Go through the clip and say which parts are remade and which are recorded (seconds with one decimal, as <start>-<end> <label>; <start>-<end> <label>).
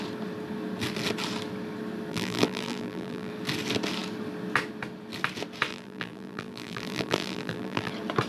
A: 0.0-2.1 recorded; 2.1-3.3 remade; 3.3-5.7 recorded; 5.7-7.9 remade; 7.9-8.3 recorded